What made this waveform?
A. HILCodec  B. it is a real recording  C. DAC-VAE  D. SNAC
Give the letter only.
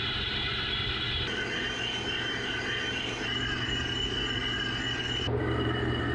B